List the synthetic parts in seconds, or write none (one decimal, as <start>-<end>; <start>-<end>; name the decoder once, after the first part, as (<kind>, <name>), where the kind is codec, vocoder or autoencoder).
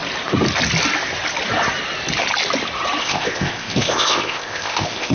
3.0-5.1 (codec, ZipCodec)